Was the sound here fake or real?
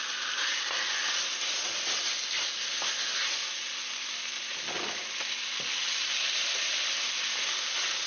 real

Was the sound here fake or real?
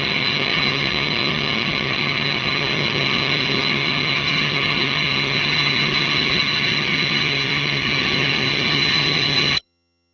fake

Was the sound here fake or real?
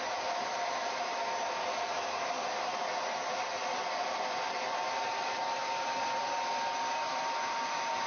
real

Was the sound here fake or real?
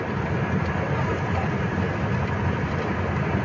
real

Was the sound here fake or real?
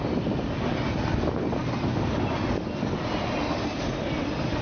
real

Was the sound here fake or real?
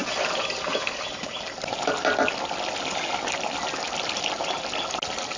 real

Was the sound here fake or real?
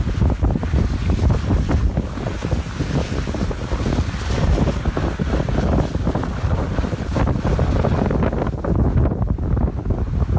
real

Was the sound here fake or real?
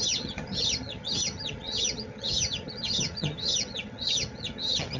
fake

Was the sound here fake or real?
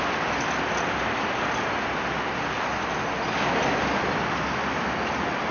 real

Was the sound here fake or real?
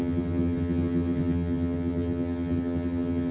fake